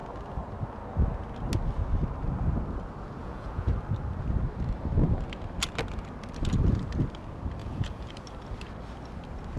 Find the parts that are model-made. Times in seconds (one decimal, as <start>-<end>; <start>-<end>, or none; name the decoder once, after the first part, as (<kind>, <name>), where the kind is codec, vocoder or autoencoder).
3.2-3.7 (vocoder, Vocos); 7.6-8.1